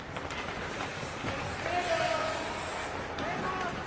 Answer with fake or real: real